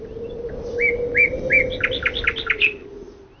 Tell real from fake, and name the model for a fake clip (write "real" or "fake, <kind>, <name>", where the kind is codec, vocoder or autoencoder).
real